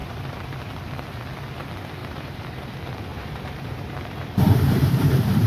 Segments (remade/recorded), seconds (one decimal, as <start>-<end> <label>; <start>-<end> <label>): 0.0-0.7 remade; 0.7-2.0 recorded; 2.0-2.7 remade; 2.7-3.1 recorded; 3.1-5.5 remade